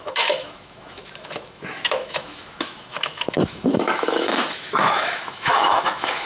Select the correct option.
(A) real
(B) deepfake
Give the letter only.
B